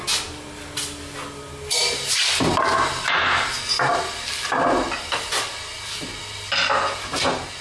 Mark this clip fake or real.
real